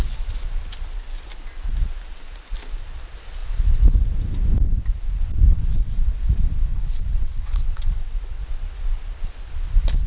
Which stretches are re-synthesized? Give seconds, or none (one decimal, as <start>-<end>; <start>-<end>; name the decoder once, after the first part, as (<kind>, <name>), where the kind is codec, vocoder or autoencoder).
5.5-6.1 (vocoder, WaveNeXt); 6.7-8.4